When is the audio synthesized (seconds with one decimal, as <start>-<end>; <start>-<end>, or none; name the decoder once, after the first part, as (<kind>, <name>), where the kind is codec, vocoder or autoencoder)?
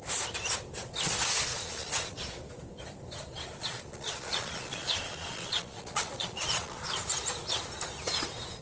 1.5-2.2 (vocoder, Vocos); 3.6-6.8